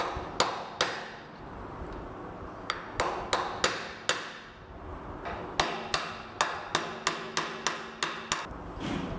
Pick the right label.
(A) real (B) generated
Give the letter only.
A